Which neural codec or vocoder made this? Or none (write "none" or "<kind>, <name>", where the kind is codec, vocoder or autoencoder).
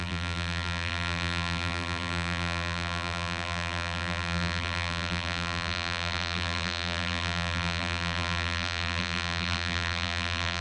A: vocoder, BigVGAN v2